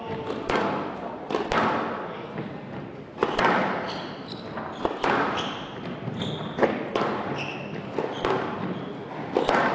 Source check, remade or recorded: recorded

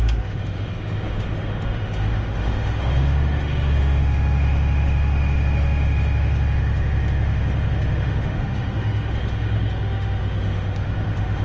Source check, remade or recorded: remade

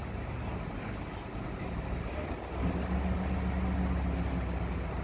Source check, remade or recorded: recorded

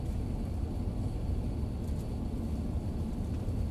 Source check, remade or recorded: recorded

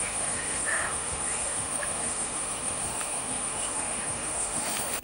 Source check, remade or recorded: remade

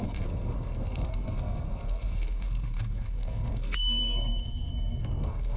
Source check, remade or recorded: remade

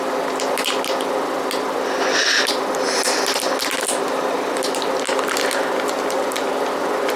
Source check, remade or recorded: recorded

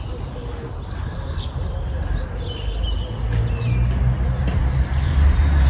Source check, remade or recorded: recorded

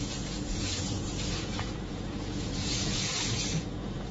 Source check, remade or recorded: remade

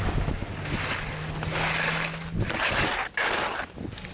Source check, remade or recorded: recorded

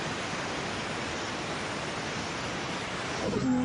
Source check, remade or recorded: recorded